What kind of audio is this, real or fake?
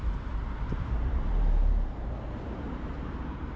fake